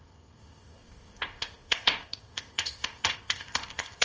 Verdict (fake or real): fake